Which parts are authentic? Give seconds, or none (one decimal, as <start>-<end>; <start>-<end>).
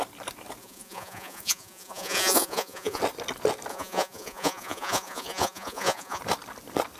0.0-0.6; 3.0-3.7; 6.2-7.0